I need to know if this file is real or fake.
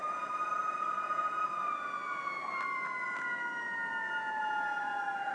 real